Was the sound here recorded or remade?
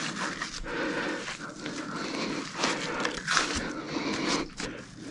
recorded